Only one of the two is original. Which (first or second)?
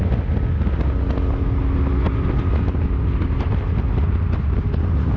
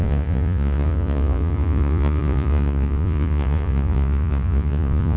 first